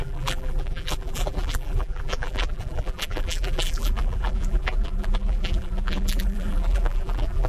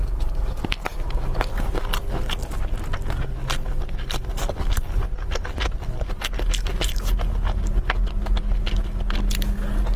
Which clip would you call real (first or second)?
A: second